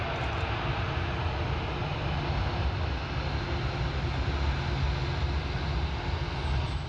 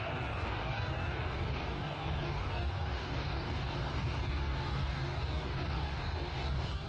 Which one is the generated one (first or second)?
second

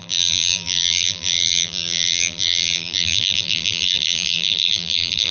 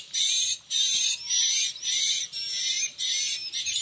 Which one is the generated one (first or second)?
first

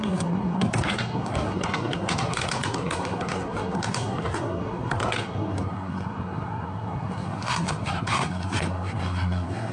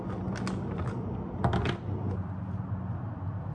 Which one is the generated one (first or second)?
first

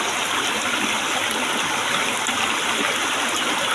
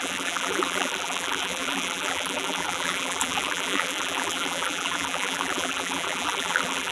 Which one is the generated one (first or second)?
second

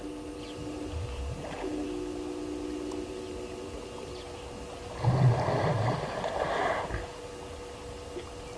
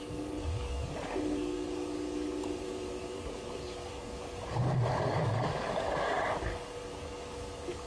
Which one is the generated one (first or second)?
second